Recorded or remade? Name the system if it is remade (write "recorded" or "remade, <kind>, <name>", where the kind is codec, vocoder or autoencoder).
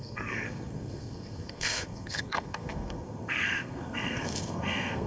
remade, codec, SNAC